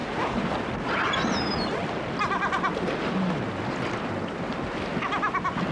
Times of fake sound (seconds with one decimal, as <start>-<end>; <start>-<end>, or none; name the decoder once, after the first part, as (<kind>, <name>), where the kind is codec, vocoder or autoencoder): 0.0-0.5 (vocoder, BigVGAN v2); 2.2-3.4